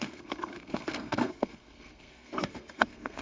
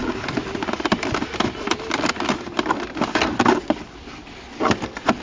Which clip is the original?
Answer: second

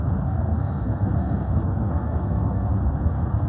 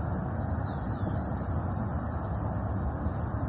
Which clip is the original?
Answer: second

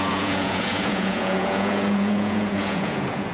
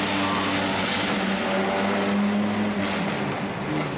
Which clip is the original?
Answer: second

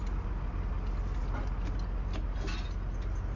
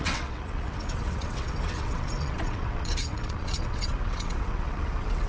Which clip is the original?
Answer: first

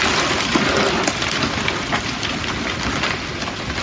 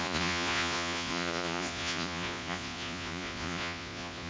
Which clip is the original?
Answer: first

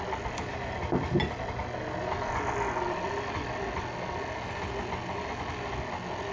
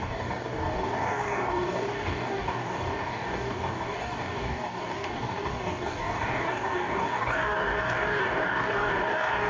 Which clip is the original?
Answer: first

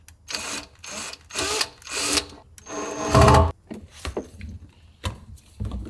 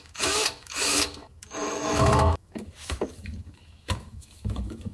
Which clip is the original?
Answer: first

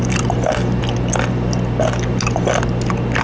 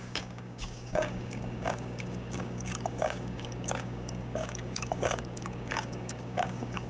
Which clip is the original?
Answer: first